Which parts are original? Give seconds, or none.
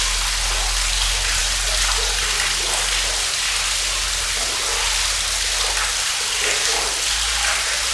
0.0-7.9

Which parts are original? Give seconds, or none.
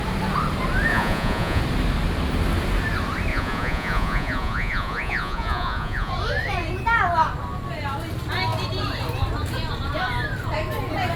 0.0-0.9; 1.6-3.3; 6.1-11.2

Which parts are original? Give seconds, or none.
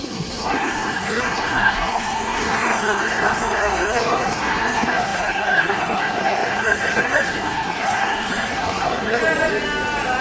9.2-10.2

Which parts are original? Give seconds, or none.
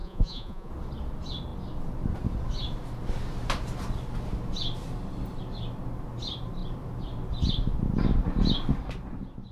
0.7-9.5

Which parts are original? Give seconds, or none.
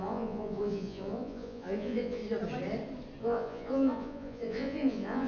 2.2-3.2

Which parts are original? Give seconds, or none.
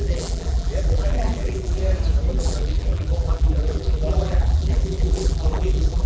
1.8-2.3